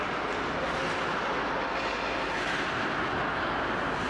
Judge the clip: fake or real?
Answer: real